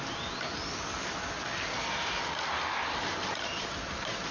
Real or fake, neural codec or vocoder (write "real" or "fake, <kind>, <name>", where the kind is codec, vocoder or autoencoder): real